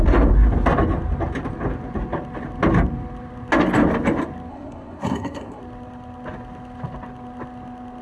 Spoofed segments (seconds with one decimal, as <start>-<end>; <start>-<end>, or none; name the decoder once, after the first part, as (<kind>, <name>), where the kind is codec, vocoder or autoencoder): 4.5-5.6 (codec, SNAC)